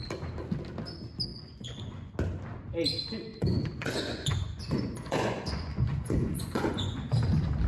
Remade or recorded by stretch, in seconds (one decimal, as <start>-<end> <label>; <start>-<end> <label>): 0.0-1.3 recorded; 1.3-2.1 remade; 2.1-3.3 recorded; 3.3-7.0 remade; 7.0-7.7 recorded